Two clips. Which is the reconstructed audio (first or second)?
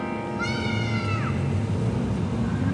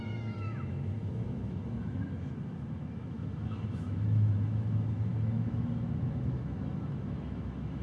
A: second